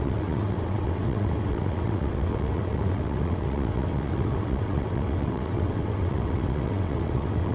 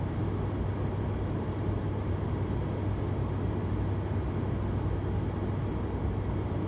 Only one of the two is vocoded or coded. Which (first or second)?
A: first